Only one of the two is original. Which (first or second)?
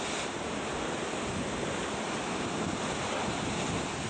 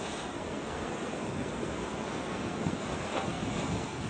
first